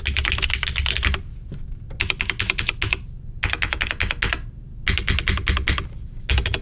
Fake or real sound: real